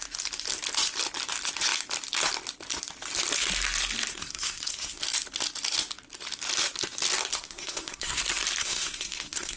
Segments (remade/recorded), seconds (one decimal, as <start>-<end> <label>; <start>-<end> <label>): 0.0-4.1 recorded; 4.1-5.0 remade; 5.0-7.3 recorded; 7.3-8.2 remade; 8.2-8.6 recorded; 8.6-9.6 remade